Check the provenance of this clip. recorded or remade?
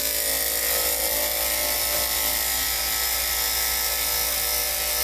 recorded